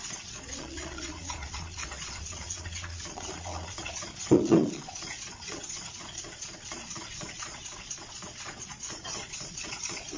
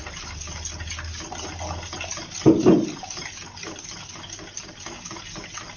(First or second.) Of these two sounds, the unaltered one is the second